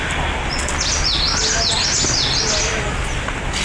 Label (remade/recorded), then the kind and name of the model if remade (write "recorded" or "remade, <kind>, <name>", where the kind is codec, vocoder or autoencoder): recorded